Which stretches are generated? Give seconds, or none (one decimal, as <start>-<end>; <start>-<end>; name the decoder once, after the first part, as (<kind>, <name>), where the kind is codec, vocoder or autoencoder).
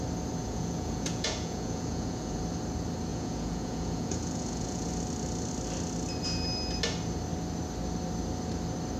0.4-2.4 (vocoder, Vocos); 3.1-4.9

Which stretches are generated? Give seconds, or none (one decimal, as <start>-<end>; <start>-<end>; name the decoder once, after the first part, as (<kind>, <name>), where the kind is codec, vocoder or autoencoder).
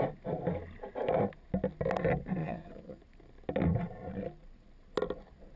2.4-3.0 (vocoder, Vocos)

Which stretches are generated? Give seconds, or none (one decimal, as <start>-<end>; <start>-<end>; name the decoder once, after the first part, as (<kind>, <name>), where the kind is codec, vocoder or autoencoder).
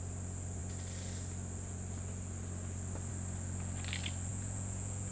4.3-5.1 (vocoder, Vocos)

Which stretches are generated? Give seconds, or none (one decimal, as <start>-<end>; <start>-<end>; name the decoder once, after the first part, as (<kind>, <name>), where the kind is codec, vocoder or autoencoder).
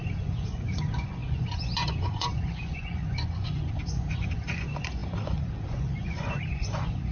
0.0-7.1 (vocoder, Vocos)